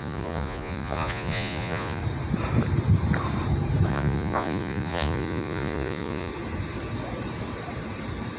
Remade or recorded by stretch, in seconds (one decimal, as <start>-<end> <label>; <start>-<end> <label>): 0.0-2.0 remade; 2.0-3.9 recorded; 3.9-6.3 remade; 6.3-8.4 recorded